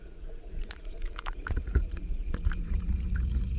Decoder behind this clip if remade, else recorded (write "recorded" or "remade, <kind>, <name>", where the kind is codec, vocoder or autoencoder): remade, vocoder, Vocos